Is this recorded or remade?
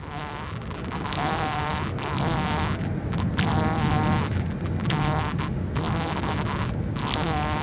recorded